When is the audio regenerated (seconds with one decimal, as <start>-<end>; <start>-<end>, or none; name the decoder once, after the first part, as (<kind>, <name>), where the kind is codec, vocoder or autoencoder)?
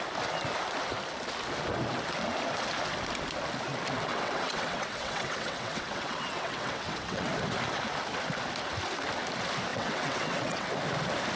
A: 4.1-7.3 (vocoder, WaveNeXt); 9.7-10.7